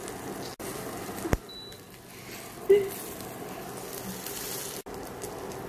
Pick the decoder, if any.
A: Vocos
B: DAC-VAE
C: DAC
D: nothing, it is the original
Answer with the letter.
D